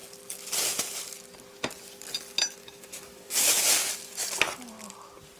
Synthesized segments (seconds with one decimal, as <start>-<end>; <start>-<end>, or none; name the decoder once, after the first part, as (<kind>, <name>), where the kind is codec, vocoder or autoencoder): 2.6-3.6 (codec, DAC)